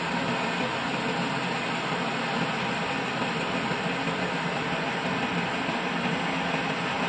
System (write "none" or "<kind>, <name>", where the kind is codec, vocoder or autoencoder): none